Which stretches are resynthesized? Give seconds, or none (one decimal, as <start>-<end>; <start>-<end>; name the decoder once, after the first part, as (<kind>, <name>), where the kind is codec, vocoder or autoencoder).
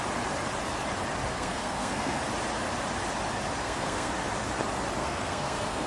1.3-2.2 (codec, SNAC); 3.6-4.1; 5.0-5.9